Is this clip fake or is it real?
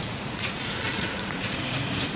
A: fake